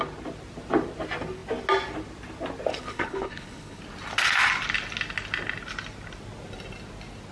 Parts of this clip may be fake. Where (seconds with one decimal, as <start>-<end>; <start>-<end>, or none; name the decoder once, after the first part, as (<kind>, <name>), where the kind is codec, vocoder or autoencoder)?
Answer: 2.7-3.8 (codec, HILCodec)